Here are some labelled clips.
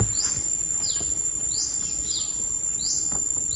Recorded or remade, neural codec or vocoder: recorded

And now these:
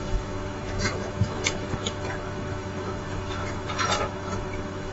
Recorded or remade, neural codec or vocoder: remade, autoencoder, DAC-VAE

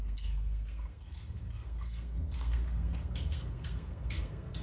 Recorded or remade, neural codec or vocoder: remade, codec, SNAC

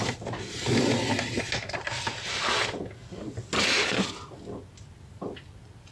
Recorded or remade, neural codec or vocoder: recorded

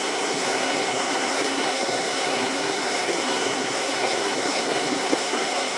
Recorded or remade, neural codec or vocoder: remade, codec, SNAC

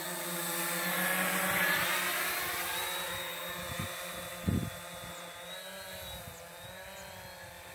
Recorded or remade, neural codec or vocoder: recorded